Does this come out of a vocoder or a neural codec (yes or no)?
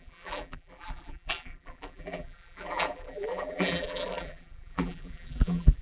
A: yes